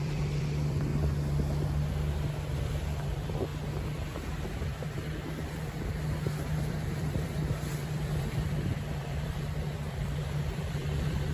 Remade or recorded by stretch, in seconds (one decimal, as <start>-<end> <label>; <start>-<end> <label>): 0.0-0.9 remade; 0.9-2.6 recorded; 2.6-3.5 remade; 3.5-5.3 recorded; 5.3-11.3 remade